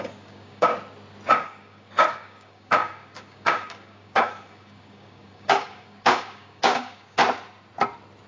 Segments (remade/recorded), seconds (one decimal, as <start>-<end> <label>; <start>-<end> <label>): 0.0-0.7 remade; 0.7-1.3 recorded; 1.3-7.2 remade; 7.2-8.3 recorded